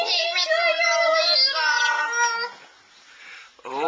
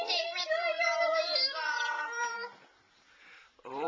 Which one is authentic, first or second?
first